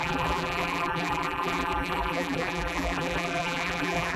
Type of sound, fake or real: fake